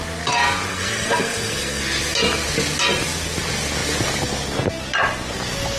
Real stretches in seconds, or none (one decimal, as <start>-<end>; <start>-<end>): 0.0-0.7; 1.8-5.8

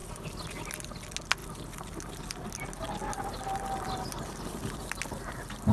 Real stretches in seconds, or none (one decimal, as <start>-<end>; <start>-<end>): 0.0-5.7